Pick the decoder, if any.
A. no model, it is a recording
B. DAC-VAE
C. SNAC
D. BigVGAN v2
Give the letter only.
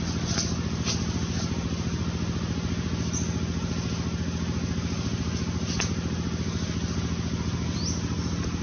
A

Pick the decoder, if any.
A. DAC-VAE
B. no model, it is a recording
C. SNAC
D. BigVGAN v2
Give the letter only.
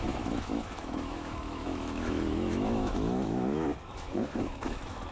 A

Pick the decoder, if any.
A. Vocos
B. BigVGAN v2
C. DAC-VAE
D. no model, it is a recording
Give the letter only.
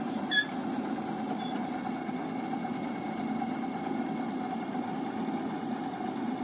D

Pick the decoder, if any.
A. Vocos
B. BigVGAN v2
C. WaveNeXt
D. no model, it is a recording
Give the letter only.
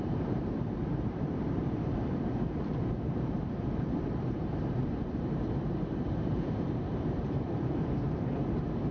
B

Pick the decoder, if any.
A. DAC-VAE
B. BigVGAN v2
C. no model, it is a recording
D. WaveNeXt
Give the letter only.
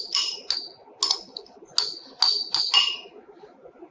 C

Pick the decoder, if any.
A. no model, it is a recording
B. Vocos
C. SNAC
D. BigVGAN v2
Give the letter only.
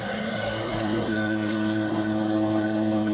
C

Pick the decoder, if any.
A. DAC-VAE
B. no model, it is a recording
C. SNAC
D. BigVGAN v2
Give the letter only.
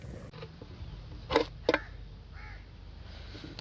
B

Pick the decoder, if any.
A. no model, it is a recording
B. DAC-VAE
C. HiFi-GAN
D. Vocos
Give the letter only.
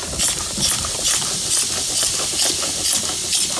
A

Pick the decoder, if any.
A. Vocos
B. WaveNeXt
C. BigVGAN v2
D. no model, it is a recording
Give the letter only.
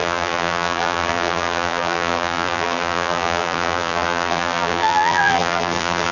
C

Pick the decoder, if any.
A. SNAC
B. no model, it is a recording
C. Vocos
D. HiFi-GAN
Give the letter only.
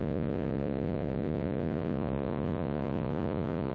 C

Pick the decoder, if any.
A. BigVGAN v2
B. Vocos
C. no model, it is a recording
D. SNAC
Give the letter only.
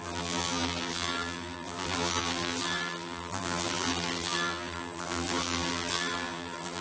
A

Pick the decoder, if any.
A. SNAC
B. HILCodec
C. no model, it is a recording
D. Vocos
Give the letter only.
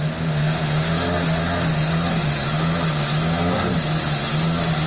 C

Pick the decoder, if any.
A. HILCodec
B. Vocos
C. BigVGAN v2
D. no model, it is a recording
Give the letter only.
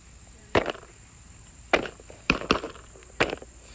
C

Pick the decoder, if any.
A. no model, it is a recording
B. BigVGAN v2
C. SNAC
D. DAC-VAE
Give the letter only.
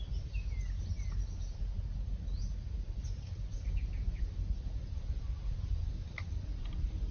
A